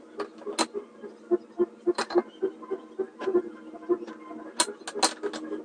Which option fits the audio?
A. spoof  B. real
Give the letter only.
B